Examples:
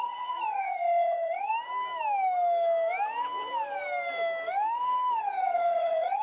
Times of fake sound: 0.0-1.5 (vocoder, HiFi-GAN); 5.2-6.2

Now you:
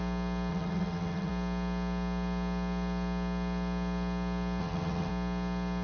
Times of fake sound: 0.5-1.3 (vocoder, HiFi-GAN); 4.6-5.1

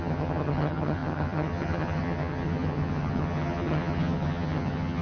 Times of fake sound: 0.0-5.0 (vocoder, HiFi-GAN)

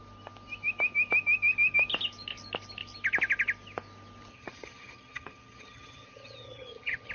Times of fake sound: 4.3-7.1 (vocoder, HiFi-GAN)

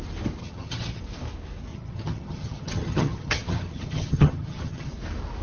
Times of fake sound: 0.4-1.0 (vocoder, HiFi-GAN); 1.7-4.9